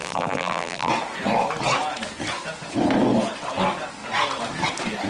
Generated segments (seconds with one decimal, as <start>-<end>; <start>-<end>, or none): 0.0-0.9